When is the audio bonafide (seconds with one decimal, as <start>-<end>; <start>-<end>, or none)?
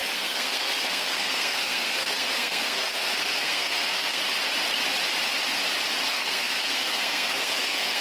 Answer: 4.2-6.1